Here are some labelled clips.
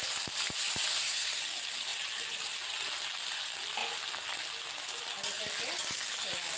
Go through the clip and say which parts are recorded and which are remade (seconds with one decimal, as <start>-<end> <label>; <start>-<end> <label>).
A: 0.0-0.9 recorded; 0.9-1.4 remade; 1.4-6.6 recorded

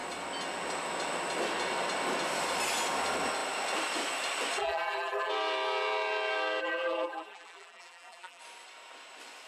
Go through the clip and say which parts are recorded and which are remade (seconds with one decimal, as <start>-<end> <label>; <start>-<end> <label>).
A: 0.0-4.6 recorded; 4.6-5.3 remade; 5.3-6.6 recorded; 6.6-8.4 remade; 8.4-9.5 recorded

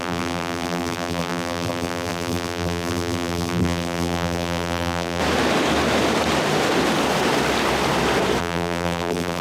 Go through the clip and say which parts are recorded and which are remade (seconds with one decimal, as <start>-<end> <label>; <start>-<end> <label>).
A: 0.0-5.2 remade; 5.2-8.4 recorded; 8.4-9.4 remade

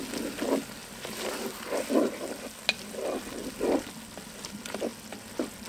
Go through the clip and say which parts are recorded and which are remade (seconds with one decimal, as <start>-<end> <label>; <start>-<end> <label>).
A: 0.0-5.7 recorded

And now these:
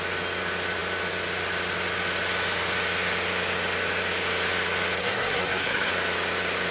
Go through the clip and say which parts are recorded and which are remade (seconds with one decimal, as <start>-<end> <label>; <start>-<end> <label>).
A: 0.0-5.0 recorded; 5.0-5.9 remade; 5.9-6.7 recorded

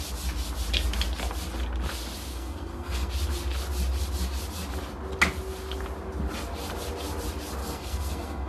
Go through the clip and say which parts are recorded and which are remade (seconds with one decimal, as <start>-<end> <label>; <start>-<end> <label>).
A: 0.0-2.3 recorded; 2.3-3.1 remade; 3.1-7.6 recorded; 7.6-8.5 remade